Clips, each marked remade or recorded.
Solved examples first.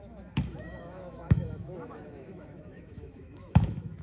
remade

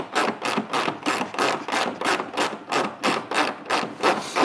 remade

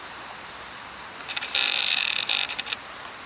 recorded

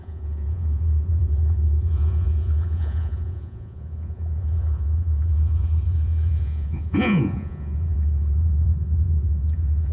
remade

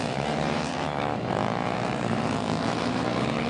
remade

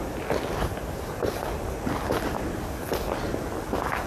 recorded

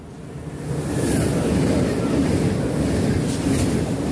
recorded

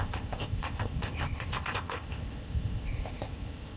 remade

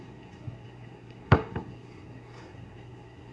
remade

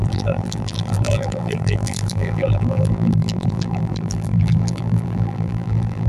remade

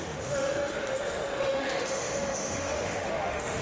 remade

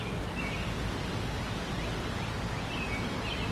recorded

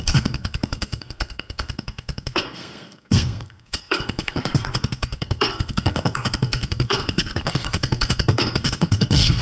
remade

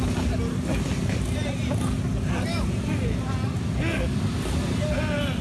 recorded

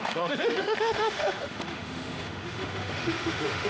remade